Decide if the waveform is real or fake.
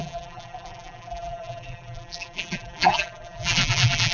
fake